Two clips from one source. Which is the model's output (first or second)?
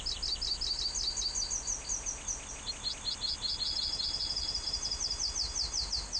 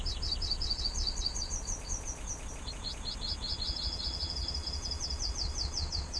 second